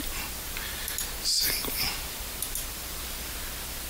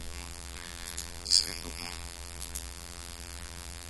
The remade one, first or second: second